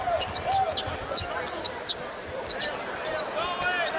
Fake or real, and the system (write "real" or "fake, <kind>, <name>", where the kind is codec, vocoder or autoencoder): real